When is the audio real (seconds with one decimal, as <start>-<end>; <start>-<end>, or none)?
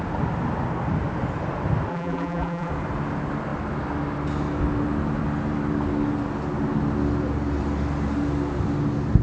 0.0-1.9; 2.7-9.2